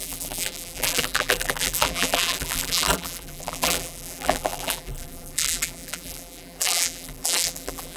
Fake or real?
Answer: fake